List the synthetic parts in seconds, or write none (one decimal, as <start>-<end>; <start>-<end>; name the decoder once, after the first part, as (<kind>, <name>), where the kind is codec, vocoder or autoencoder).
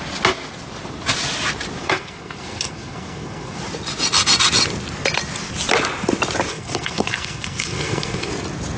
1.8-3.6 (codec, SNAC); 6.5-8.3